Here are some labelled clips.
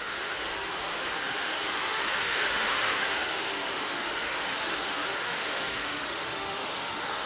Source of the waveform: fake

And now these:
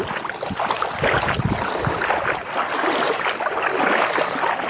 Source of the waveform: real